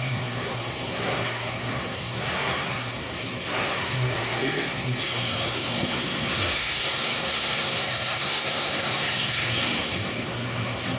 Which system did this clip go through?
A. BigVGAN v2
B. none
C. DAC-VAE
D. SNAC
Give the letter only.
D